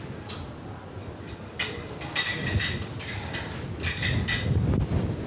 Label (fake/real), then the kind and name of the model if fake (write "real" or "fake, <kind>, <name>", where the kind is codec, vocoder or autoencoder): real